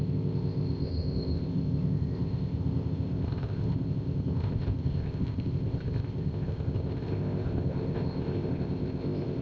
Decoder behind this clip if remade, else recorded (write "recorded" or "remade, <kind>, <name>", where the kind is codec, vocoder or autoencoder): remade, codec, ZipCodec